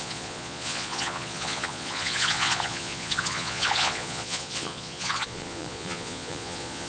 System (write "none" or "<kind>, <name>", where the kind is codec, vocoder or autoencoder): vocoder, Vocos